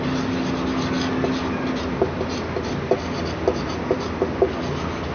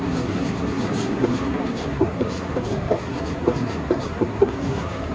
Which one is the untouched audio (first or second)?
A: first